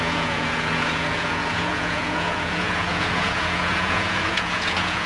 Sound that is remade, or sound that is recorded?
remade